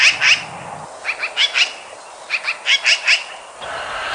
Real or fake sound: real